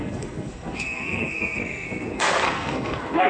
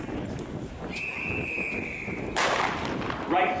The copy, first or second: first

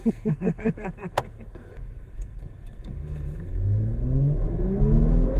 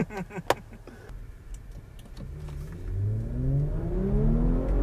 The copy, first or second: first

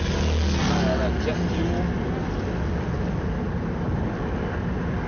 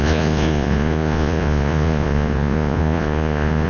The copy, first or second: second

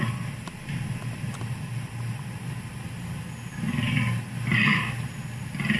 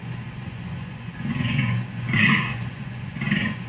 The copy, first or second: second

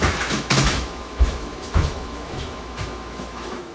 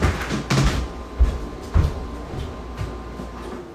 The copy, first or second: first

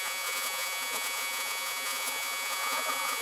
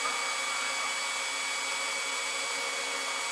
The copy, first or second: first